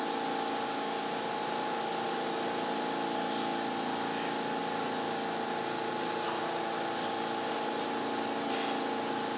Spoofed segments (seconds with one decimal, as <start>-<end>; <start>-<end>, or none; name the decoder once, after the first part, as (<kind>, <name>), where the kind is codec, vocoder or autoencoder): none